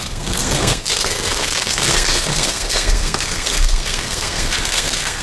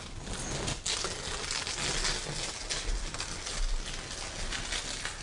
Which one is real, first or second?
second